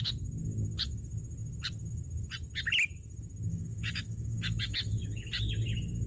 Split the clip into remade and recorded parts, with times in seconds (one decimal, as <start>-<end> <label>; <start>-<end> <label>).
0.0-3.5 recorded; 3.5-5.5 remade; 5.5-6.1 recorded